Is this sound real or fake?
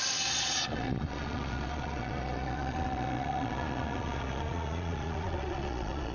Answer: fake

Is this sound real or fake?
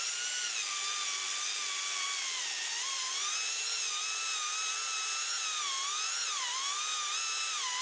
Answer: real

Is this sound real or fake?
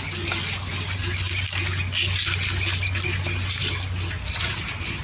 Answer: real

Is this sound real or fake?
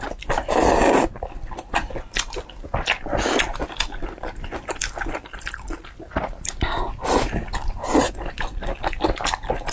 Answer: real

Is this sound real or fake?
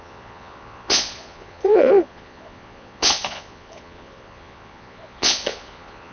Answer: fake